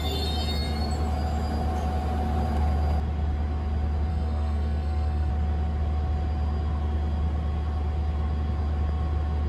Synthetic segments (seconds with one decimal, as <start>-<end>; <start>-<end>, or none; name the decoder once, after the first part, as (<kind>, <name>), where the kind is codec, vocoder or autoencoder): 4.1-5.3 (codec, SNAC)